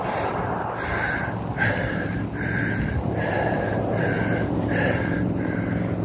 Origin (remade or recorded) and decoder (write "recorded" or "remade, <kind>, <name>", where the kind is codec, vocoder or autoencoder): remade, vocoder, BigVGAN v2